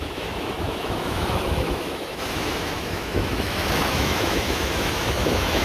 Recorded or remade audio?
remade